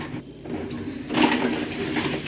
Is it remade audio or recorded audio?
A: recorded